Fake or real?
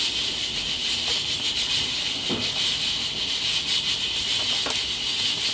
real